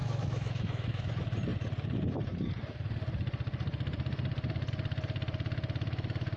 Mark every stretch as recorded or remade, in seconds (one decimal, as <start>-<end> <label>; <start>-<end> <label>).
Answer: 0.0-1.1 remade; 1.1-6.4 recorded